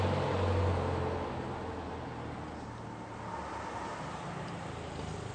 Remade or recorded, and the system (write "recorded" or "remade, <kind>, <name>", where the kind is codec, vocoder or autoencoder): recorded